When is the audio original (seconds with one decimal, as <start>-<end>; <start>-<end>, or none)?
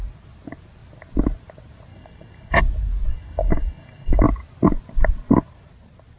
0.0-1.9; 2.6-3.1; 4.2-6.2